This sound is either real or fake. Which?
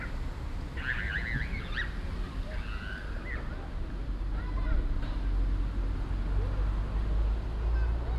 real